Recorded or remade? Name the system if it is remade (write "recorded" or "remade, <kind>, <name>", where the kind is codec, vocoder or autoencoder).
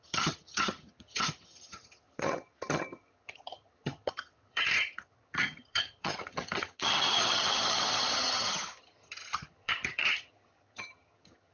remade, vocoder, HiFi-GAN